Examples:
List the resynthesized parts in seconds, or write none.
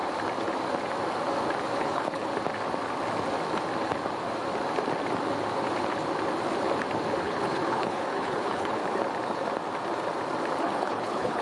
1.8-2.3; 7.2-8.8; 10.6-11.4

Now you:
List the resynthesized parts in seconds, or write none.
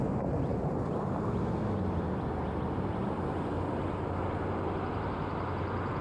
none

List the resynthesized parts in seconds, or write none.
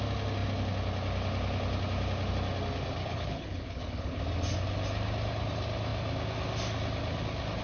3.0-4.2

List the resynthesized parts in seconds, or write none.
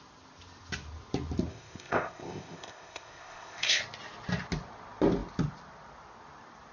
1.5-3.8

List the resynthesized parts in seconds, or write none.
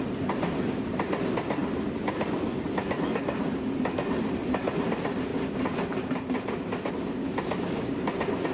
none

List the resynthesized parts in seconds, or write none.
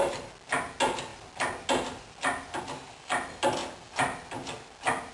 none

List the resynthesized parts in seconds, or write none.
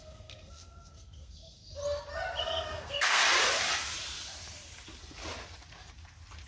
0.0-1.8; 2.4-3.2